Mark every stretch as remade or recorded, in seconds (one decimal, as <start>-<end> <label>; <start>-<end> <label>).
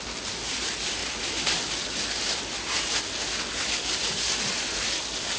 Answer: 0.0-5.4 recorded